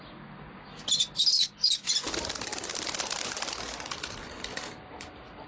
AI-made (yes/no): no